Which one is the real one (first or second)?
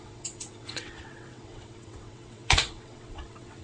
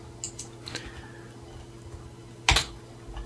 second